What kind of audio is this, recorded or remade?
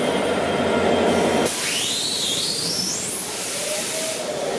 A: recorded